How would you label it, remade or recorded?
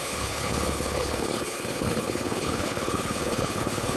remade